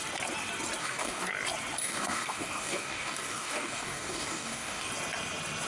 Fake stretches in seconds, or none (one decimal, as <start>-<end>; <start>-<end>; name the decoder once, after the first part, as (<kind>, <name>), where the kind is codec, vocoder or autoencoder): 0.8-1.3 (codec, DAC); 1.8-4.9

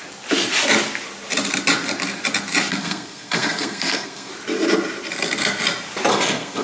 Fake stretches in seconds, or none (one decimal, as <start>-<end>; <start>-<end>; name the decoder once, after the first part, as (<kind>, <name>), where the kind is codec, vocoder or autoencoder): 2.7-4.3 (codec, SNAC); 6.1-6.6

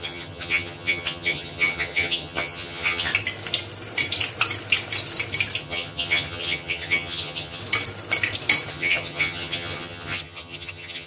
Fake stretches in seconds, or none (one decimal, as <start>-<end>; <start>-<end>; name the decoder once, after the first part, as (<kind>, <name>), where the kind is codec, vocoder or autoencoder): 0.0-3.1 (vocoder, HiFi-GAN); 5.6-7.6; 8.7-11.1

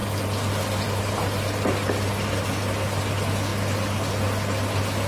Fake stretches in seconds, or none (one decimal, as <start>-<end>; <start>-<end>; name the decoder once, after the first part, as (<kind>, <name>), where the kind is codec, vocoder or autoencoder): none

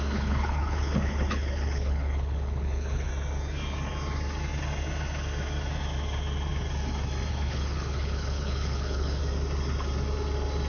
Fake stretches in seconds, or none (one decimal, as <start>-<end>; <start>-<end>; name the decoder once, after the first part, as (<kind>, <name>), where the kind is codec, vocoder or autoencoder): 0.0-3.1 (codec, HILCodec); 7.3-9.2

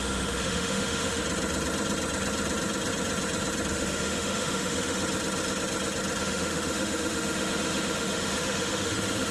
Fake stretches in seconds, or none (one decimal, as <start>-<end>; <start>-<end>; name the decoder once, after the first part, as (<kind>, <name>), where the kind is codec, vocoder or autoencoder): 0.0-1.2 (autoencoder, DAC-VAE); 3.7-5.0; 6.2-9.3

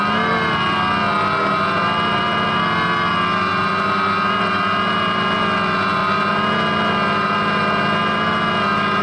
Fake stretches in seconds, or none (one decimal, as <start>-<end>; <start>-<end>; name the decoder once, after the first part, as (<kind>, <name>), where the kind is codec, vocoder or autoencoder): none

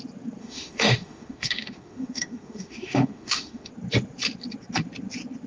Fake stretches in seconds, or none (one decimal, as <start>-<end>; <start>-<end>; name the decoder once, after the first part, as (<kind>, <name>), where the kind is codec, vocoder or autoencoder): 0.4-3.7 (autoencoder, DAC-VAE)